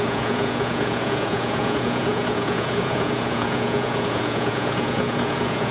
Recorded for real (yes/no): no